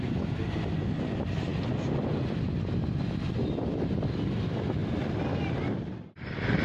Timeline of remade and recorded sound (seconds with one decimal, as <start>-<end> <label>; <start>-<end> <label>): 0.0-6.6 recorded